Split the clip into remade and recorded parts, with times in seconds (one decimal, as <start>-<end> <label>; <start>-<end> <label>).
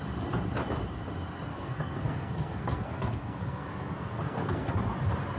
0.0-1.5 recorded; 1.5-4.7 remade; 4.7-5.4 recorded